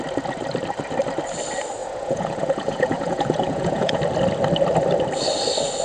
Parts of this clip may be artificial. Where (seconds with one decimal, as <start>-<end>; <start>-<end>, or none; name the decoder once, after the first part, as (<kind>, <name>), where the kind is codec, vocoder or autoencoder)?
1.8-4.0 (vocoder, Vocos)